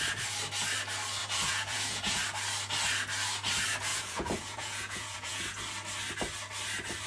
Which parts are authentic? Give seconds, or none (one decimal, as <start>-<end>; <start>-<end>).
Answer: 0.0-1.2; 2.2-3.9; 5.6-7.1